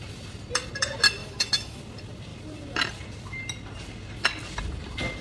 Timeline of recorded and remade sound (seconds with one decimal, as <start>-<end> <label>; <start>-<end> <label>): 0.0-1.2 recorded; 1.2-1.8 remade; 1.8-5.2 recorded